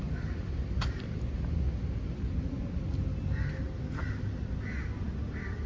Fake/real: real